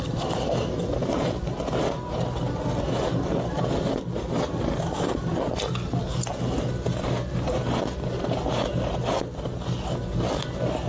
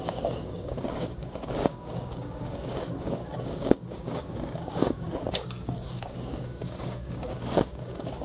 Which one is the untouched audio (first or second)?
first